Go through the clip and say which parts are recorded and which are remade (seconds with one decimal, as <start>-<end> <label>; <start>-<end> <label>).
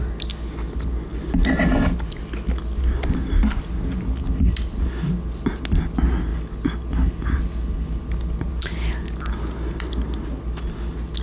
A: 0.0-11.2 recorded